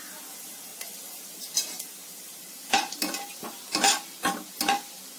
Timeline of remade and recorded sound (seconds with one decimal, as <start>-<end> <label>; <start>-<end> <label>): 0.0-5.2 recorded